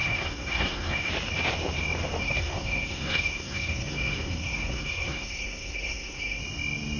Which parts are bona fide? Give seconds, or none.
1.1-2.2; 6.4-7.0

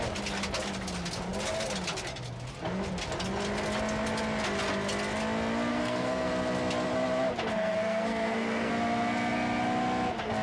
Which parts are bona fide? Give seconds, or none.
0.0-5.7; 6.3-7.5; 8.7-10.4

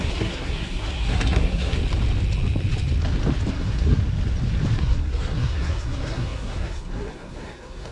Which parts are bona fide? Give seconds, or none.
1.8-3.5; 4.0-4.8

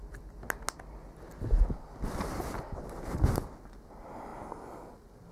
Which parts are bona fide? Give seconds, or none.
0.0-5.3

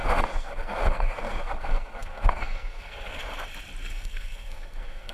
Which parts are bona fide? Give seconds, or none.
3.2-3.9